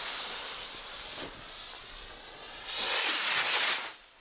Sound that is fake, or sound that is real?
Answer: real